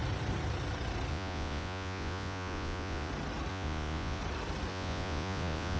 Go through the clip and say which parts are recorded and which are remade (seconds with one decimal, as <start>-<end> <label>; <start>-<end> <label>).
0.0-1.1 recorded; 1.1-3.1 remade; 3.1-3.5 recorded; 3.5-4.2 remade; 4.2-4.7 recorded; 4.7-5.8 remade